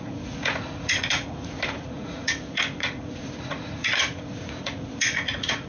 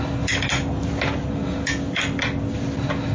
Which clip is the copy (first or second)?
first